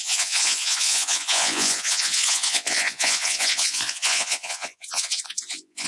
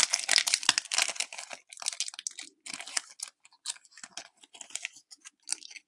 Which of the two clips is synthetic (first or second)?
first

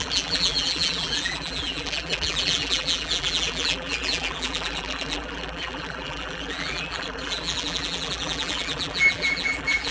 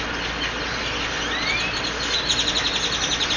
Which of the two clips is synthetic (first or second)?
first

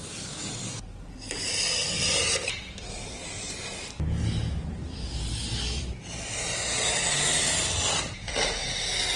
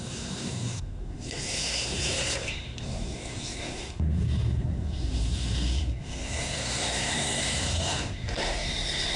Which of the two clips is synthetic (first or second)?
second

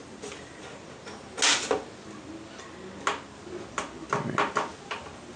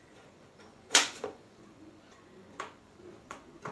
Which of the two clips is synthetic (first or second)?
second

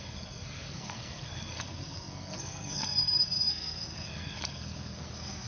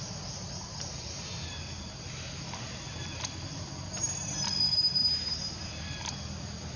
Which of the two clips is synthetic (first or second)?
first